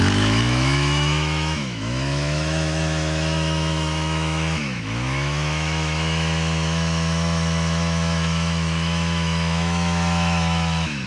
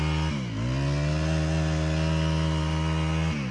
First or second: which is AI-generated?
first